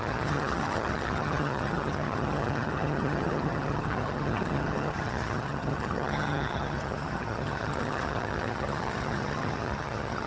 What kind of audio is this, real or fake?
fake